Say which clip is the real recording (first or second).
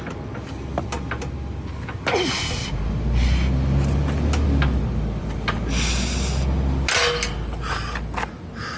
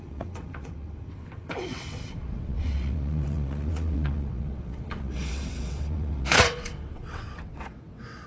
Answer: first